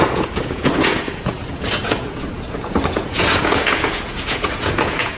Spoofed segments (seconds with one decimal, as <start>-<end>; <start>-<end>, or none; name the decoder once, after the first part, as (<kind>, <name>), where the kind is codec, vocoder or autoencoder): 0.0-5.2 (vocoder, Vocos)